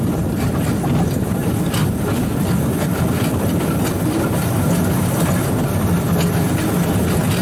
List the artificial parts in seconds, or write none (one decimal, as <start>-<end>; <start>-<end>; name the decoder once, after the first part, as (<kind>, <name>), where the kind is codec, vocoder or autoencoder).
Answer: none